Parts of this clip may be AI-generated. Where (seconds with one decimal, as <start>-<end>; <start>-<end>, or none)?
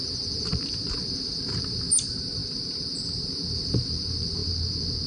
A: 0.0-4.4